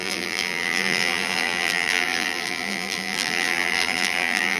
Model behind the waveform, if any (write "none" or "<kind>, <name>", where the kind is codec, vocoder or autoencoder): vocoder, BigVGAN v2